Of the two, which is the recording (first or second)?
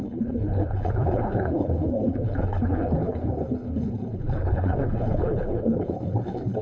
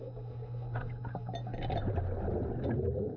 second